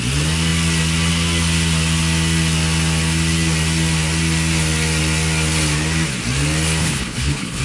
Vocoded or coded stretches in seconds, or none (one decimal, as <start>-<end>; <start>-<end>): 6.8-7.6